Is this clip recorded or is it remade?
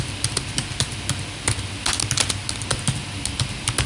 recorded